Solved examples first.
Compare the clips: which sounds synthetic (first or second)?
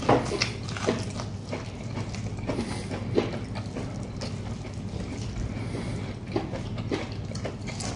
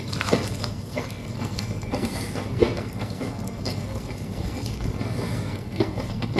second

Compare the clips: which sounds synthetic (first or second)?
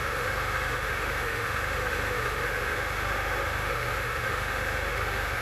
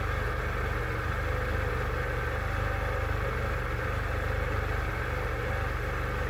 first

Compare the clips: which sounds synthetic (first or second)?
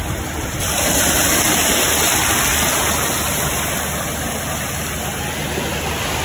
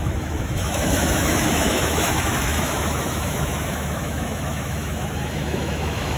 second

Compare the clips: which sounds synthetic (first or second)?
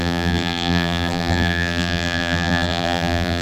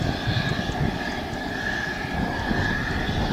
first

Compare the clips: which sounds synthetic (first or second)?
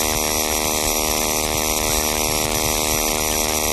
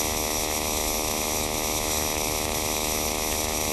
second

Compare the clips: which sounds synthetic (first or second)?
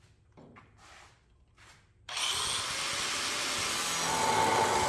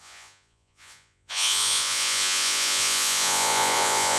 second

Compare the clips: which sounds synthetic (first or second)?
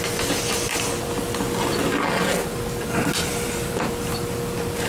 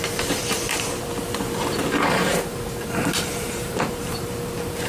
second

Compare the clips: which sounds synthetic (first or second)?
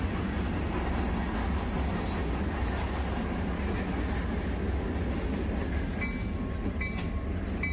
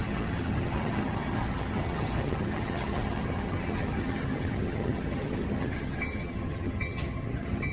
second